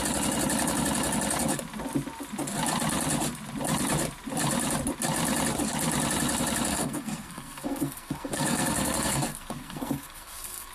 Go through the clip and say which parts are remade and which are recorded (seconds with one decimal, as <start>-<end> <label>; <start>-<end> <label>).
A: 0.0-6.7 recorded; 6.7-10.7 remade